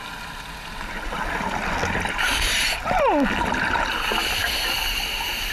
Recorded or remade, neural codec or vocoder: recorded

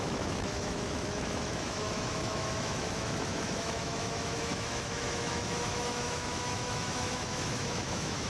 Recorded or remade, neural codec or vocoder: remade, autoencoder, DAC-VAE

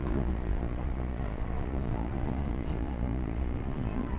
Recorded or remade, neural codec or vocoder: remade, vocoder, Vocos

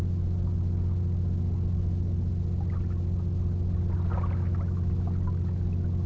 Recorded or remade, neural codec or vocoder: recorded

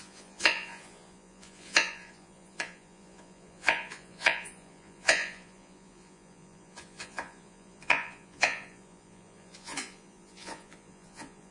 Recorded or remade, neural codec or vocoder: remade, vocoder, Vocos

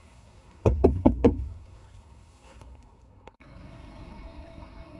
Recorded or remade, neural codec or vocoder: remade, codec, SNAC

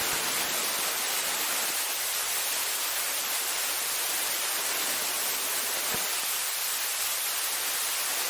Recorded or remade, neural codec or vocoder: remade, vocoder, BigVGAN v2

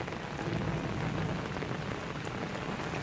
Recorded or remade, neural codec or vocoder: recorded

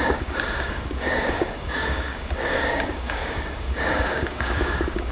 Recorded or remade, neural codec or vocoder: remade, codec, DAC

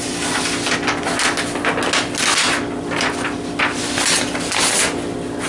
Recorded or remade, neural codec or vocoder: recorded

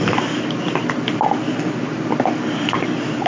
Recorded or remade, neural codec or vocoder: recorded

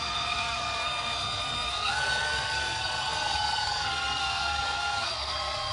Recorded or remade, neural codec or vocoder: remade, codec, SNAC